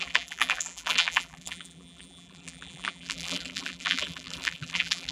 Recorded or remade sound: remade